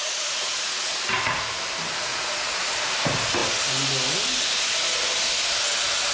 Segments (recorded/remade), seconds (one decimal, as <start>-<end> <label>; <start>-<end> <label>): 0.0-0.9 remade; 0.9-2.1 recorded; 2.1-2.7 remade; 2.7-6.1 recorded